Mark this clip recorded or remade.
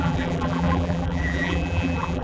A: remade